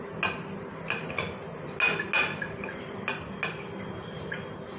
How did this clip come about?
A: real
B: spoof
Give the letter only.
A